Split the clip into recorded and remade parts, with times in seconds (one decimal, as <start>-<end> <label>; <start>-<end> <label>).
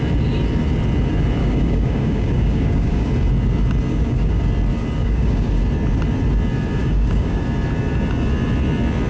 0.0-1.4 recorded; 1.4-3.1 remade; 3.1-3.9 recorded; 3.9-4.4 remade; 4.4-5.0 recorded; 5.0-5.6 remade; 5.6-6.8 recorded; 6.8-7.4 remade; 7.4-9.1 recorded